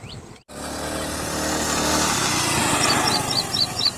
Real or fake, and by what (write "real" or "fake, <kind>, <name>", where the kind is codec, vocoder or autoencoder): real